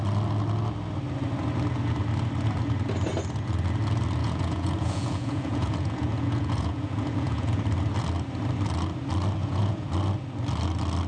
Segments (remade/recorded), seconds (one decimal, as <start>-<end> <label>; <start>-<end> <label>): 0.0-4.2 recorded; 4.2-7.6 remade; 7.6-9.4 recorded; 9.4-9.9 remade; 9.9-11.1 recorded